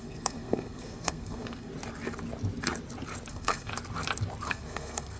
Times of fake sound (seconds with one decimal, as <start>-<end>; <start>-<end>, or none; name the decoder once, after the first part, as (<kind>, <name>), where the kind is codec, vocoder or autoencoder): 0.0-1.7 (codec, SNAC); 3.3-3.7; 4.5-5.2

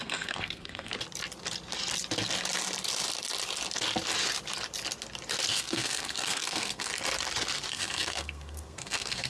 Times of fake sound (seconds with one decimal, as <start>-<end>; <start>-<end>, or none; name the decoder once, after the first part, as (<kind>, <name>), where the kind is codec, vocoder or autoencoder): 0.0-0.9 (codec, SNAC); 5.5-6.9; 7.7-9.3